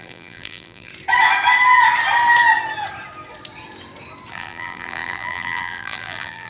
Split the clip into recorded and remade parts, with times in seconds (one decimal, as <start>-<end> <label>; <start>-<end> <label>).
0.0-0.9 remade; 0.9-4.3 recorded; 4.3-6.5 remade